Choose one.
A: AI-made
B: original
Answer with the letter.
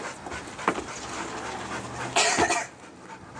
B